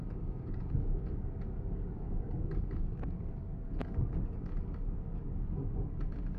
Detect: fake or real fake